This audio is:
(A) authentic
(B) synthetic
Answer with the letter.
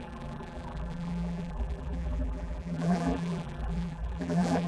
B